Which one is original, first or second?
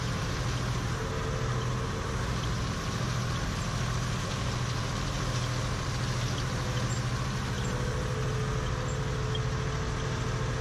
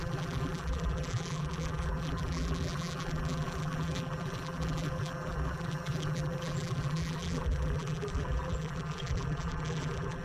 first